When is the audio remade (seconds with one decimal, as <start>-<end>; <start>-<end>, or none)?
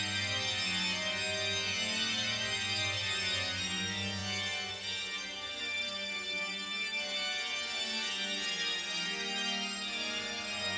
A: none